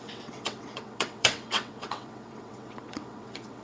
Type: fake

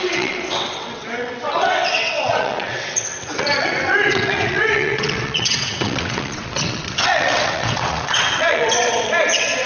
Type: fake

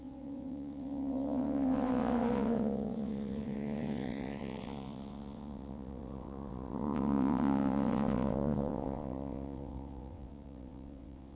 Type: fake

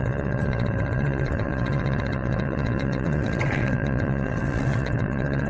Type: fake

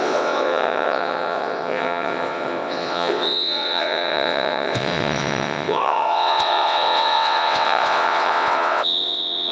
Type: fake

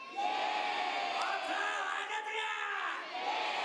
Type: real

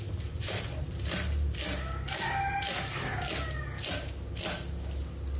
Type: real